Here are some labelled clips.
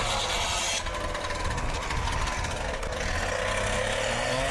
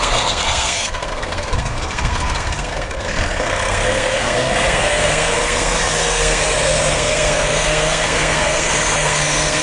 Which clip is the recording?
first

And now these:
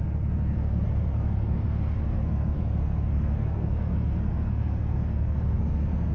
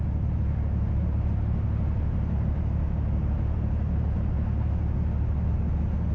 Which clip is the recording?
second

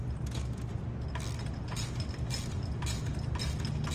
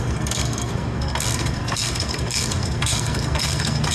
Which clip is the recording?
first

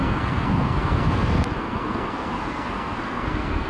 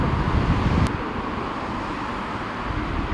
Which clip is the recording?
second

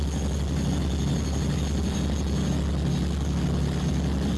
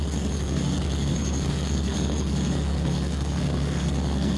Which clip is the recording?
first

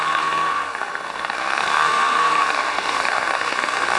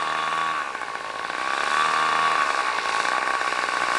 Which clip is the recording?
second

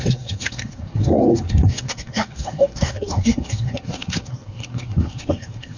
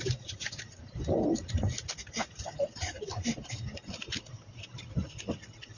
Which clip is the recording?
second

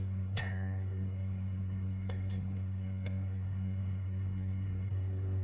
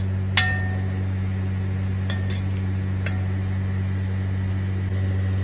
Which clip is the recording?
second